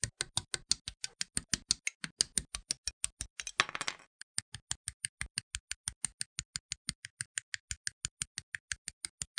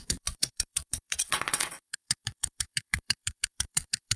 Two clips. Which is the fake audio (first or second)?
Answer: second